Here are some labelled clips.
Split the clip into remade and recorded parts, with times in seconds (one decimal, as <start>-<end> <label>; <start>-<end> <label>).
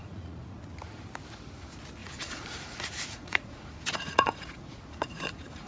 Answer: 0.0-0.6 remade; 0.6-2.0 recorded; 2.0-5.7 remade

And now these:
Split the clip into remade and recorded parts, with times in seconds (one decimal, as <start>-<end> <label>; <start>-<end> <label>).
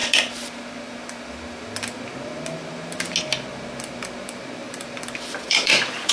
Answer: 0.0-4.6 recorded; 4.6-6.1 remade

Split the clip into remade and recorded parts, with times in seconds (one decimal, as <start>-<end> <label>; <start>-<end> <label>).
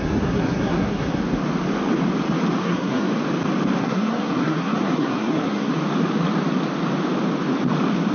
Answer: 0.0-1.2 remade; 1.2-2.6 recorded; 2.6-3.1 remade; 3.1-3.8 recorded; 3.8-5.7 remade; 5.7-8.1 recorded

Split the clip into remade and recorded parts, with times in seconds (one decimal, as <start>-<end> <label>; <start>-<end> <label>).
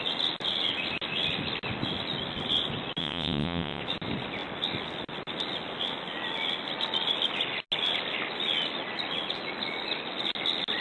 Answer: 0.0-3.0 recorded; 3.0-3.8 remade; 3.8-10.8 recorded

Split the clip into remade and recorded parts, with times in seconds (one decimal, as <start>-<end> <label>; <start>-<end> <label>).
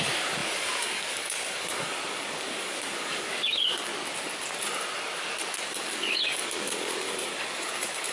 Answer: 0.0-3.9 remade; 3.9-5.7 recorded; 5.7-8.1 remade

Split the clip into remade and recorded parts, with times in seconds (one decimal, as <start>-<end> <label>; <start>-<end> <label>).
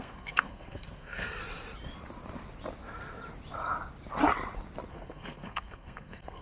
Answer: 0.0-1.4 remade; 1.4-4.9 recorded; 4.9-6.4 remade